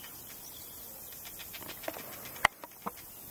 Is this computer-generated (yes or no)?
no